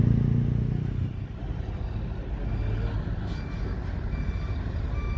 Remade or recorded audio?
recorded